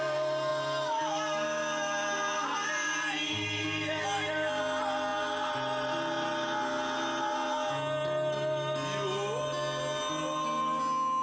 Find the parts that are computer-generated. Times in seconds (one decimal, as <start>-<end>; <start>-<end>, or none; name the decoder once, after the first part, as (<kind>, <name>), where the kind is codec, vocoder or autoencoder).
none